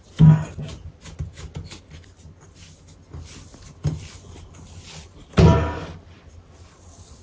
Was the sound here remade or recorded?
recorded